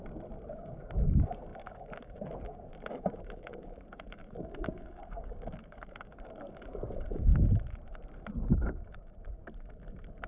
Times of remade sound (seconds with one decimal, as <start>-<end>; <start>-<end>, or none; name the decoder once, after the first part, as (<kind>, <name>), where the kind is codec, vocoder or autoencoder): 0.5-7.3 (codec, DAC); 8.5-9.4